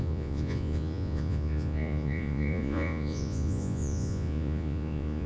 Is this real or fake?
fake